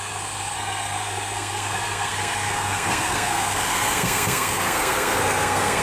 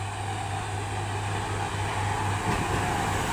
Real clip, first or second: second